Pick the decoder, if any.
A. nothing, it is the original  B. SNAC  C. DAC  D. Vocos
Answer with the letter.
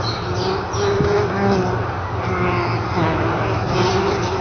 A